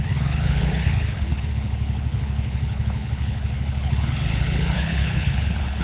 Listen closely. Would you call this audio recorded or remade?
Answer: remade